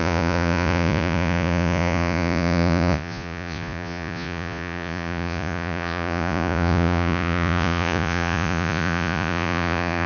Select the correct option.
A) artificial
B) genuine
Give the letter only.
A